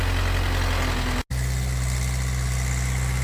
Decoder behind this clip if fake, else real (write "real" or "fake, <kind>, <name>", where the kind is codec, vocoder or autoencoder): real